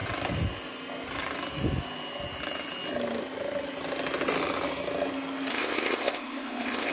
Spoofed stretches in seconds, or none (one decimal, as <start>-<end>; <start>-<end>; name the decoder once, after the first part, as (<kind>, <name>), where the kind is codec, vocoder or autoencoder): 5.5-6.9 (codec, ZipCodec)